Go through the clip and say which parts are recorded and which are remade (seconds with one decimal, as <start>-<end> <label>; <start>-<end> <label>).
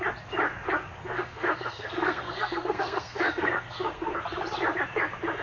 0.0-1.0 recorded; 1.0-4.2 remade; 4.2-5.4 recorded